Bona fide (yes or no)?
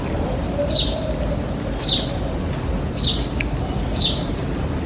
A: yes